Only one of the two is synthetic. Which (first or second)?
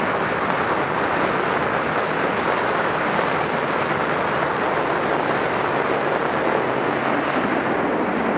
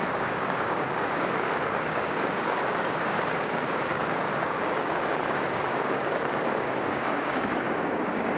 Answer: second